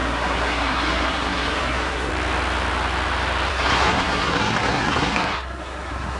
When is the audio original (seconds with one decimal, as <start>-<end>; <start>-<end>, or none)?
2.1-3.5